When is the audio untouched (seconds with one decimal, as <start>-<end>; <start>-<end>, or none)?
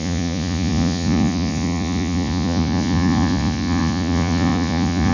none